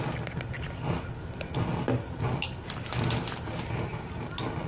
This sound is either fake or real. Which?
real